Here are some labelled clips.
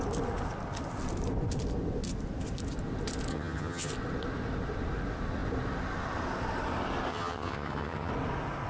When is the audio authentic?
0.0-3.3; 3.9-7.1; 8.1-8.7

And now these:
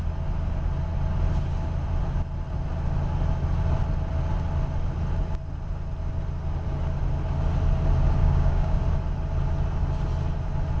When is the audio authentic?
0.0-8.2; 8.8-10.8

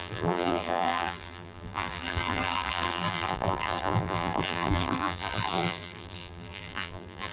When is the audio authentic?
none

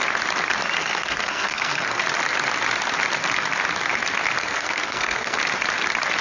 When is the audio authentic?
0.0-0.8; 2.0-4.4; 5.4-6.2

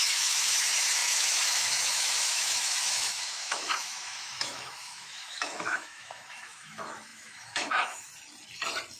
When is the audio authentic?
8.1-9.0

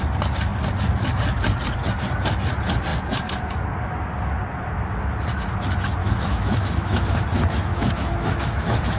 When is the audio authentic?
0.0-6.0; 7.2-7.7